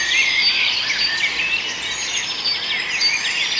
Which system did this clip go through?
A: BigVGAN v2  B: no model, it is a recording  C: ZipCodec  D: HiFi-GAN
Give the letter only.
B